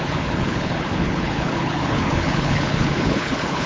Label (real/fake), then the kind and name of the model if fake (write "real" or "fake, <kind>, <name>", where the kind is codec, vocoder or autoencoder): fake, codec, HILCodec